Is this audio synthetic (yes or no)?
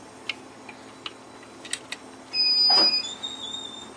no